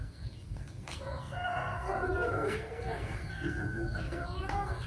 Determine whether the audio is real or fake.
fake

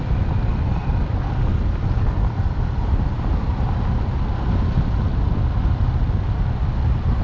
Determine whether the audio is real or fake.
real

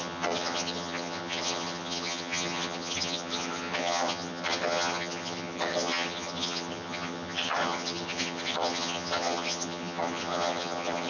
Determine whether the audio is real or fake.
fake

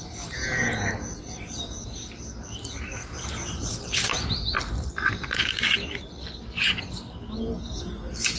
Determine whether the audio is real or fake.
fake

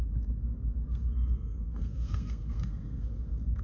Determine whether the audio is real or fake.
fake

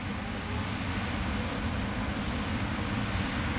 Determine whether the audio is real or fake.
real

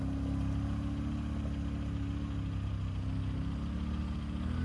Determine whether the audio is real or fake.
real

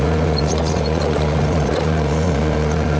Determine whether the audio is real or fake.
fake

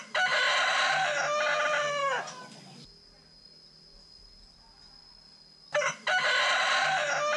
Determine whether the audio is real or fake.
real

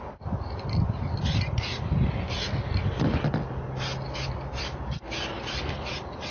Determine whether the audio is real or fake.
real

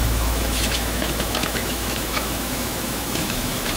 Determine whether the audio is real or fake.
fake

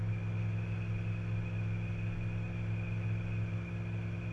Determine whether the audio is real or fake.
real